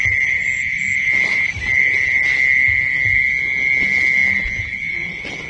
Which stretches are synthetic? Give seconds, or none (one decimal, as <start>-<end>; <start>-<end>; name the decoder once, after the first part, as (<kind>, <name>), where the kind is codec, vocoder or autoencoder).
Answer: none